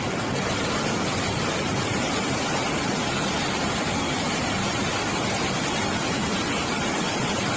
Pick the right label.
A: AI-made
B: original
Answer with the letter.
B